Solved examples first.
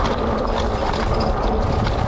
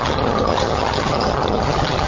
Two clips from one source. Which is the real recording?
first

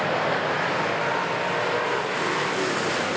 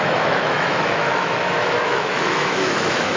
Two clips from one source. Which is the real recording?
first